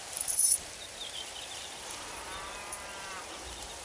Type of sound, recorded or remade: remade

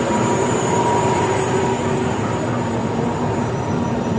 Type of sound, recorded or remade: recorded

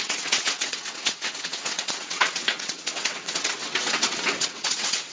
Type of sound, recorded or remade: remade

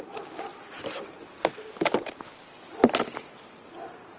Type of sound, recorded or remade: recorded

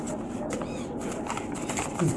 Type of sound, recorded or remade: recorded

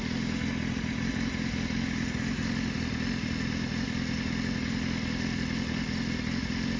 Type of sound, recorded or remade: recorded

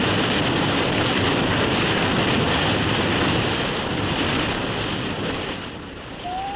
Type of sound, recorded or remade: remade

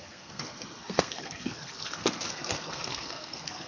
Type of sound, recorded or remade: remade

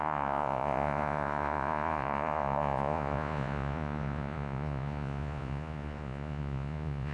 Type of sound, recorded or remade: remade